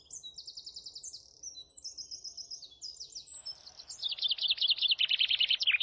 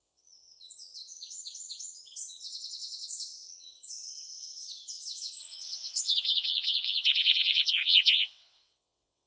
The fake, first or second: second